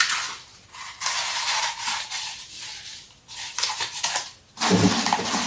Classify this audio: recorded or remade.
recorded